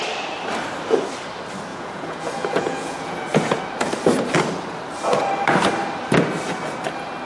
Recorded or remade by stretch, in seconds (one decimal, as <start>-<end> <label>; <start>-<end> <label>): 0.0-1.7 recorded; 1.7-3.6 remade; 3.6-7.2 recorded